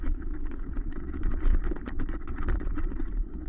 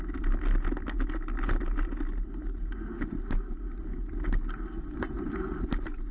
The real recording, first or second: second